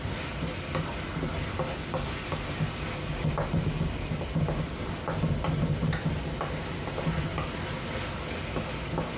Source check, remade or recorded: recorded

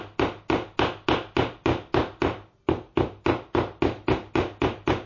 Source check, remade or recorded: recorded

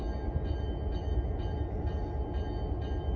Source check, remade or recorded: recorded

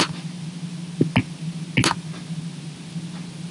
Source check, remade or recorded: recorded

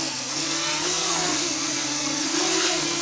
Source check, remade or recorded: remade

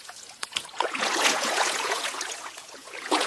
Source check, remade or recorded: remade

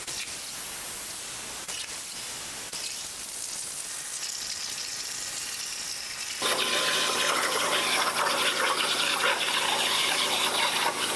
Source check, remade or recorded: recorded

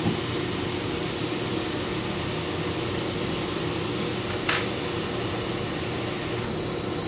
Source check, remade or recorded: recorded